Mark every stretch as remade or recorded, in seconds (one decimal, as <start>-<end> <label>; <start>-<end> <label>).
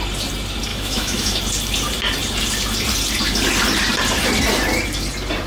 0.0-0.7 recorded; 0.7-1.4 remade; 1.4-5.5 recorded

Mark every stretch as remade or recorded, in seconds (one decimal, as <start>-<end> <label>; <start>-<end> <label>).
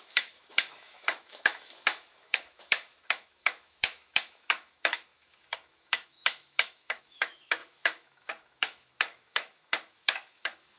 0.0-10.8 remade